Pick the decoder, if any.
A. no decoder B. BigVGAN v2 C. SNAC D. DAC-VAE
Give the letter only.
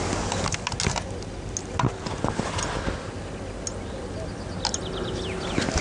A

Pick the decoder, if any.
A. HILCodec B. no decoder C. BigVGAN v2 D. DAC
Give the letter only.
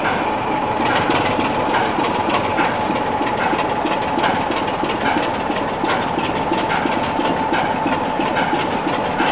B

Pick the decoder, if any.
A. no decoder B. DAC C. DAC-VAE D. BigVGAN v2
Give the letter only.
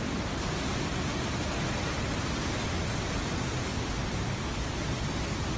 A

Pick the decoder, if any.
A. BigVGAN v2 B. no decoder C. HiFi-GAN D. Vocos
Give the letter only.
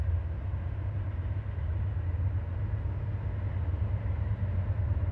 B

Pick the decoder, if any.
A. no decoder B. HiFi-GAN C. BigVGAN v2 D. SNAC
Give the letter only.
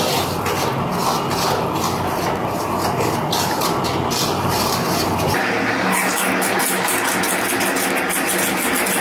A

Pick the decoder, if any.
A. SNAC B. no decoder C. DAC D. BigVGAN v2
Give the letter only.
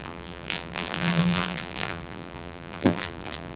D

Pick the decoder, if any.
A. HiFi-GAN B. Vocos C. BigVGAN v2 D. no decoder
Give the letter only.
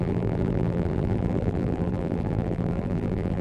C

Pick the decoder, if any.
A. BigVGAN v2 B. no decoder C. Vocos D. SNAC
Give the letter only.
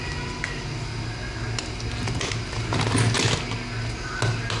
B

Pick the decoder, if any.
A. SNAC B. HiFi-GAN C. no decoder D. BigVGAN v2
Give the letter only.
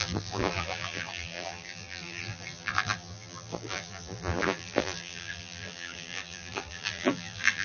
D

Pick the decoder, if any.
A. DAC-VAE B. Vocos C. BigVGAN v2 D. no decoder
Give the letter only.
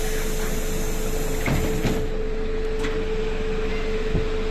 D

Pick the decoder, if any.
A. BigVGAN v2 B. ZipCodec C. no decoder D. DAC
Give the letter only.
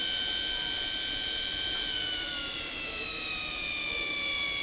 A